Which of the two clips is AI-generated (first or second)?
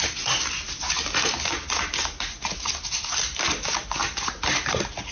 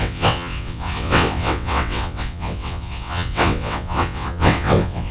second